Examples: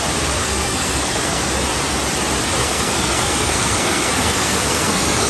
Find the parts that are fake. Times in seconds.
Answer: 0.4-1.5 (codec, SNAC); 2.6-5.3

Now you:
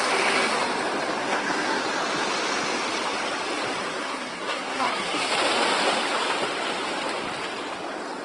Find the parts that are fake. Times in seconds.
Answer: 1.2-1.8 (codec, SNAC); 3.9-5.3

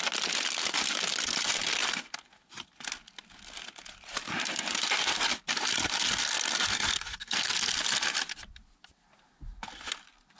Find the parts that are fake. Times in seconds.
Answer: 6.7-7.7 (codec, SNAC)

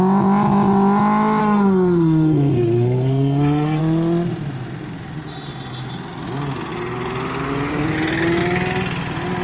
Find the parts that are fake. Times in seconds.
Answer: 1.4-3.8 (codec, SNAC)